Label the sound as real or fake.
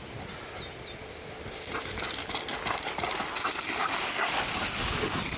real